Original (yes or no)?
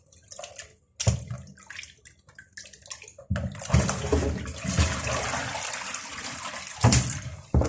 yes